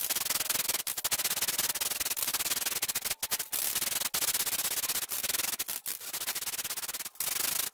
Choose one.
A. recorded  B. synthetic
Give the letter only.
A